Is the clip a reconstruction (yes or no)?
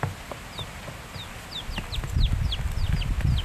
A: no